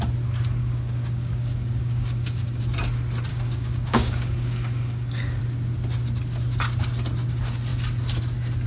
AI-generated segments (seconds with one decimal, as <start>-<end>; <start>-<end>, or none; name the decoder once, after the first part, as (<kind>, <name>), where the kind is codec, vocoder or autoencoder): 0.6-2.6 (codec, DAC); 3.3-5.4